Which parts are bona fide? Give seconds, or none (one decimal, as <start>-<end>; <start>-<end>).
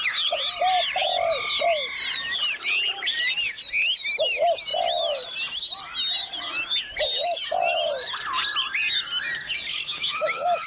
0.0-9.7